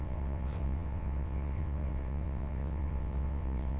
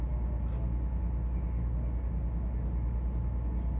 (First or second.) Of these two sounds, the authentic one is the second